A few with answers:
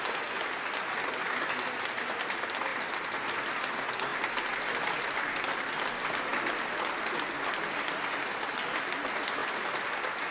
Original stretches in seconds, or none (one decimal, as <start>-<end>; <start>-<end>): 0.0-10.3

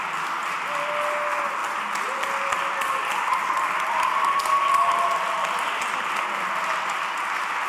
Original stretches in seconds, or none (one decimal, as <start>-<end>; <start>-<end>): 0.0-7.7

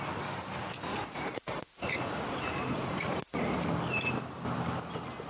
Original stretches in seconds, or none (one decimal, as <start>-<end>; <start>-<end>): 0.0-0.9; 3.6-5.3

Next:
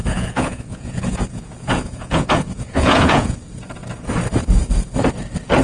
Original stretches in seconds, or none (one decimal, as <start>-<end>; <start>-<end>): 3.4-5.6

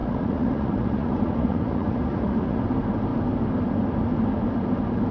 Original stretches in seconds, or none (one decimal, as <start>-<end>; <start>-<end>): 2.6-5.1

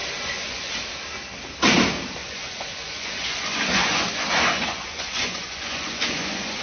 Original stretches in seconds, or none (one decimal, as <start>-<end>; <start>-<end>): 0.7-2.2

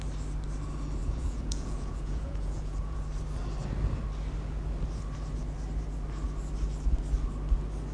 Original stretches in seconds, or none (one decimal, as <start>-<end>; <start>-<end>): 0.0-1.0; 3.0-7.9

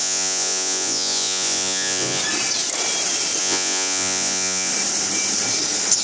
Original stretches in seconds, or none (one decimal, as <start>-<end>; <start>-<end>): 2.2-3.4; 4.7-6.0